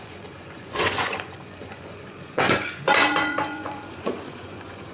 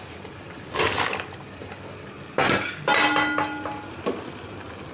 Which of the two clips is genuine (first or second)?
second